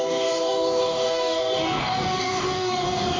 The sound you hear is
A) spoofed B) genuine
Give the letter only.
A